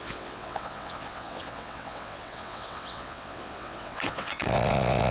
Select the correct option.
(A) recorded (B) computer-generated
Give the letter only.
B